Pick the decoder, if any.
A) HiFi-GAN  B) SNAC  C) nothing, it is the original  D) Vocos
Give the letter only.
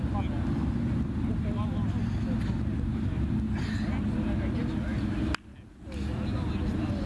C